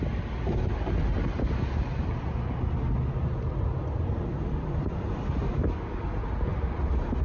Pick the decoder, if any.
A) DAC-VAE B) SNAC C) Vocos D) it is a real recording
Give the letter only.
D